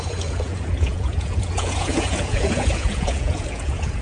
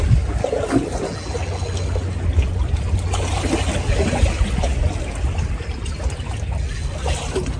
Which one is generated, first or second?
first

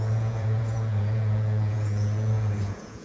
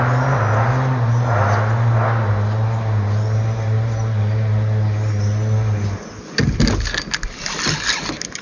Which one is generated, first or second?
first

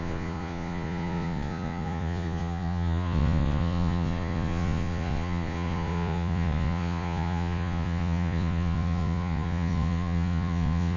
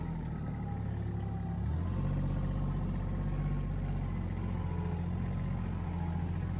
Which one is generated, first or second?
first